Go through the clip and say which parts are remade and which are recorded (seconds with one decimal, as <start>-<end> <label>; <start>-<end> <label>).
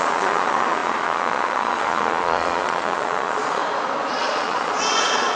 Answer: 0.0-3.6 remade; 3.6-4.2 recorded; 4.2-5.4 remade